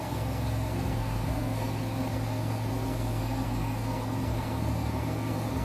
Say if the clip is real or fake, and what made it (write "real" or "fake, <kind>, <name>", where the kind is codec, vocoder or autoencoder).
fake, codec, SNAC